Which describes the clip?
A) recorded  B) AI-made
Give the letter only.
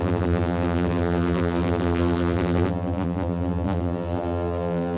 B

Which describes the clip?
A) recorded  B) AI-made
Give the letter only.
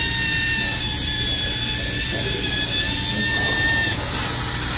A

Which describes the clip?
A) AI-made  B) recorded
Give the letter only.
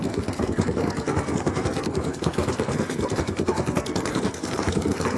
A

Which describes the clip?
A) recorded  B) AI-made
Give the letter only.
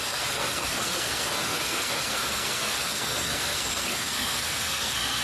B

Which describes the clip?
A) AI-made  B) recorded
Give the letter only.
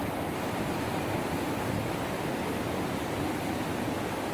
A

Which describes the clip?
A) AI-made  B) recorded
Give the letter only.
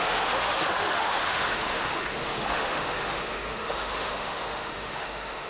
A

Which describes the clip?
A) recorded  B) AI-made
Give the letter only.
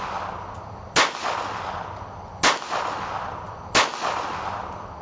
A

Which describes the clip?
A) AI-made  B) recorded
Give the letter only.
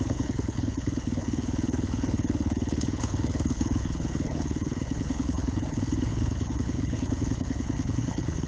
A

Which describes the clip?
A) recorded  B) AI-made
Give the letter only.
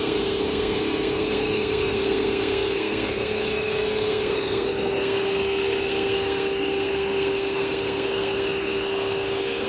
B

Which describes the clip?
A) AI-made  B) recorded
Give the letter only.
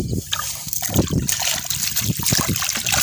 B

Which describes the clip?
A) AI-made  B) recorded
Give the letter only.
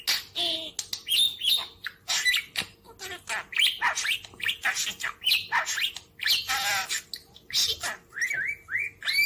B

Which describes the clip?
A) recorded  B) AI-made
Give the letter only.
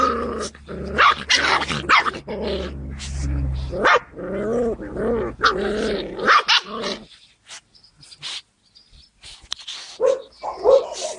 A